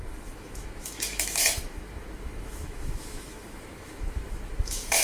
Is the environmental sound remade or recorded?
remade